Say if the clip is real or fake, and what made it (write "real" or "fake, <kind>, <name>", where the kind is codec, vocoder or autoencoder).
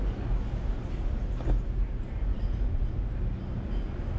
real